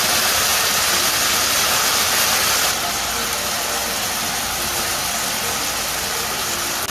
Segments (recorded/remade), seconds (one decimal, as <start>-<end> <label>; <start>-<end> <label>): 0.0-6.9 recorded